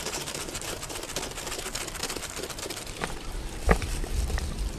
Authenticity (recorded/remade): remade